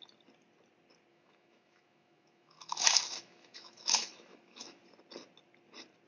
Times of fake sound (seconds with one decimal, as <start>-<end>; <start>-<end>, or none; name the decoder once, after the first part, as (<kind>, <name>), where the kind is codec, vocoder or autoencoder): 1.1-4.8 (autoencoder, DAC-VAE)